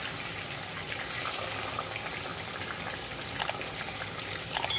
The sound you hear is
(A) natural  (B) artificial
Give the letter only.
A